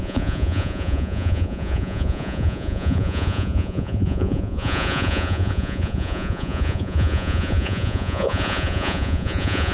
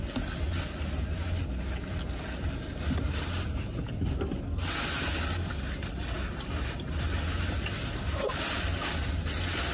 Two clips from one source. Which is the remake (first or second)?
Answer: first